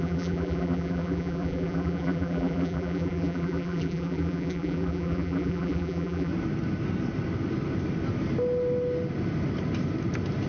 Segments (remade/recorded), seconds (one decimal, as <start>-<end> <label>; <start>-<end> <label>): 0.0-6.3 remade; 6.3-10.5 recorded

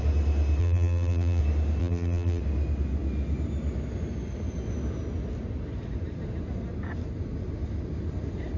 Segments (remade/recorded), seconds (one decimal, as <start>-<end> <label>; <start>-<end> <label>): 0.0-0.6 recorded; 0.6-1.4 remade; 1.4-1.8 recorded; 1.8-2.4 remade; 2.4-8.6 recorded